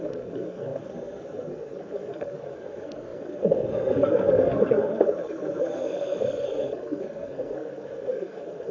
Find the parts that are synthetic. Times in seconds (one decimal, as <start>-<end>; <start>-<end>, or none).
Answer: 0.0-8.7